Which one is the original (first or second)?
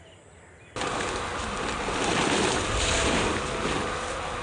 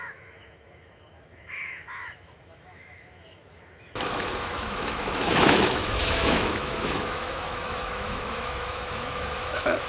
first